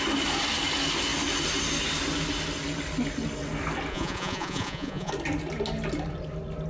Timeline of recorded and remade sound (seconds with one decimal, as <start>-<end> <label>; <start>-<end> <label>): 0.0-3.9 recorded; 3.9-5.1 remade; 5.1-6.7 recorded